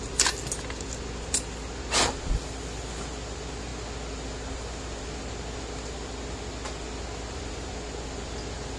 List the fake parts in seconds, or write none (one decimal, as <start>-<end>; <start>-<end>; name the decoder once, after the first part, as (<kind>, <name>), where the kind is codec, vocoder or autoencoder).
none